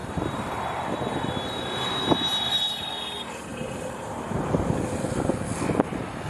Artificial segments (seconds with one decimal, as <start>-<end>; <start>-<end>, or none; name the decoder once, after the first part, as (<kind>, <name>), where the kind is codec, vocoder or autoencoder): 0.0-0.8 (vocoder, BigVGAN v2); 3.5-4.1